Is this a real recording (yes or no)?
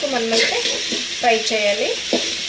yes